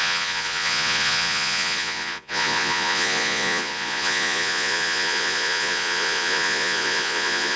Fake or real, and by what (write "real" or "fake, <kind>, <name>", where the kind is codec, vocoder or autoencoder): fake, vocoder, Vocos